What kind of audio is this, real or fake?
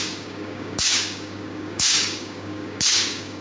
fake